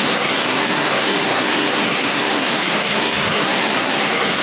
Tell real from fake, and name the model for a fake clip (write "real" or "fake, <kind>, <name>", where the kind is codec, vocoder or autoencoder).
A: fake, codec, SNAC